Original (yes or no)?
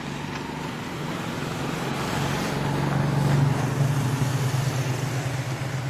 yes